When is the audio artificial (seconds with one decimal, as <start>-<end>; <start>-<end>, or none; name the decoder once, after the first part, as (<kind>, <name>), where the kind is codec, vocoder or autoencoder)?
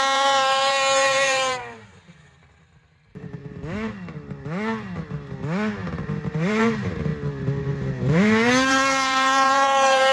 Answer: 0.0-3.4 (vocoder, BigVGAN v2); 6.0-7.1; 7.6-10.1